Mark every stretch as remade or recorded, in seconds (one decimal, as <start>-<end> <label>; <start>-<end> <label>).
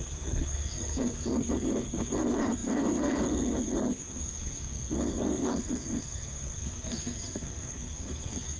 0.0-8.6 remade